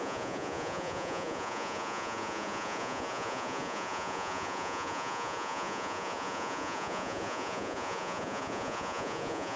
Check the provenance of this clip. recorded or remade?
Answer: remade